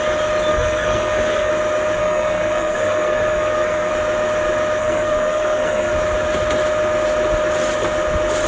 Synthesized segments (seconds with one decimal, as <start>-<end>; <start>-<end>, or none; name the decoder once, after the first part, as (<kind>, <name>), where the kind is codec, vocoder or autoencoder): 0.5-1.5 (codec, SNAC); 2.0-3.9; 4.8-5.9